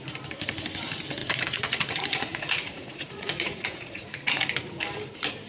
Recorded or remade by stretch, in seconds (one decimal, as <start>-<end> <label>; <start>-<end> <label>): 0.0-1.2 recorded; 1.2-4.5 remade; 4.5-5.5 recorded